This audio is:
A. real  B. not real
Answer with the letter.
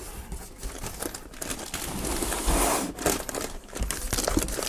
A